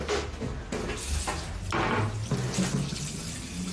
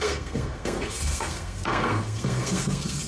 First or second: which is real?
first